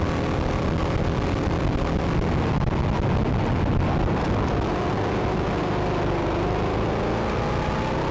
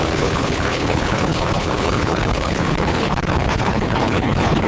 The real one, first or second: first